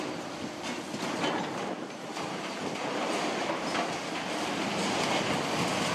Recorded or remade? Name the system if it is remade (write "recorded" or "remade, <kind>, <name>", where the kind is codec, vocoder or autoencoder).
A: recorded